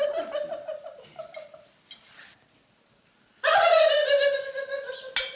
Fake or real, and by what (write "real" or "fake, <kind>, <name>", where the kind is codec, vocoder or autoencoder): real